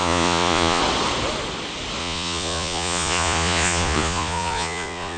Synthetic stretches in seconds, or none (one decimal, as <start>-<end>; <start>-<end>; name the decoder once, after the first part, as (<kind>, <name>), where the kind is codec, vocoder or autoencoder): 0.0-0.8 (vocoder, Vocos); 2.0-5.2